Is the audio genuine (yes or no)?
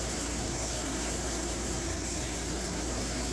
no